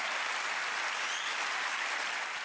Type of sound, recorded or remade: remade